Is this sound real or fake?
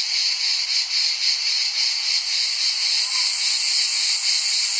real